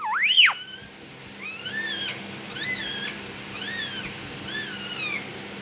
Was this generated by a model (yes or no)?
no